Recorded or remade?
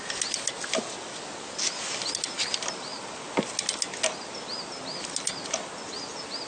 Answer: recorded